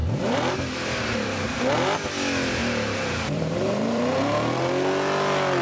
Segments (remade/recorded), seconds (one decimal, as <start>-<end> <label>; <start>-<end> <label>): 0.0-1.6 remade; 1.6-2.6 recorded; 2.6-4.7 remade; 4.7-5.6 recorded